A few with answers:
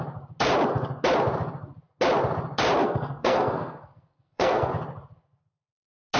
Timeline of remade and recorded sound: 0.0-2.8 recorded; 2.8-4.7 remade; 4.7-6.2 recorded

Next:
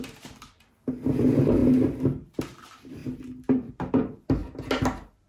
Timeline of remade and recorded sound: 0.0-4.4 remade; 4.4-5.3 recorded